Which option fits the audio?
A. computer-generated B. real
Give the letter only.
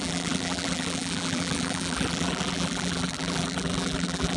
A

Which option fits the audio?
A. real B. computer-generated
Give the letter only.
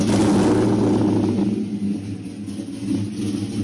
A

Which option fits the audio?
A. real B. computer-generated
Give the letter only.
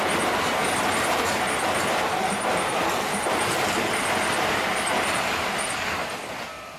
A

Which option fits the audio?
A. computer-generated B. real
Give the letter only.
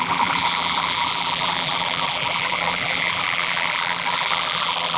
A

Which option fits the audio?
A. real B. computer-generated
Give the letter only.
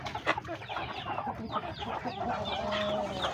A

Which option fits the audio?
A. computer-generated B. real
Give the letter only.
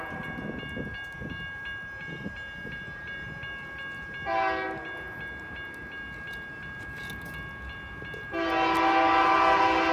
B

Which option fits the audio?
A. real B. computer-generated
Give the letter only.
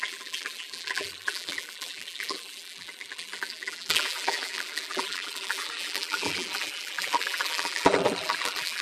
B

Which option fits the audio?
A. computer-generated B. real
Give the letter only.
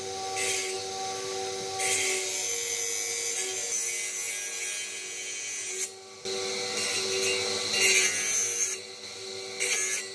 B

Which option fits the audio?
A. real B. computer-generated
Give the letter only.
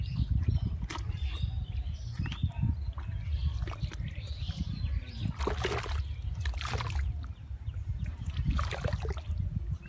A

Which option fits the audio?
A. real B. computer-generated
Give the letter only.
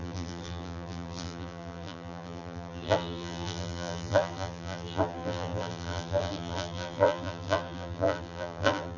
B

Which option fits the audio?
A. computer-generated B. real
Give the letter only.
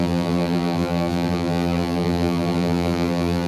A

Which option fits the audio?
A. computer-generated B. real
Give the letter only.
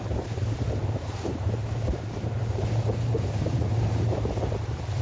A